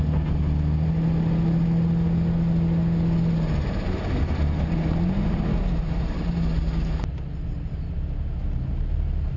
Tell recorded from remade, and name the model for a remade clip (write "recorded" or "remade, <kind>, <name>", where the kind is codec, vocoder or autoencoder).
recorded